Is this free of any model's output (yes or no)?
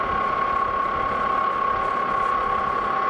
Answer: yes